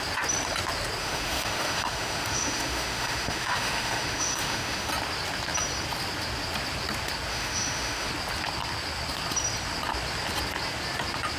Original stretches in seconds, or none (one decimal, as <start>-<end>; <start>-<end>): 0.0-1.0; 4.9-7.3; 8.1-11.4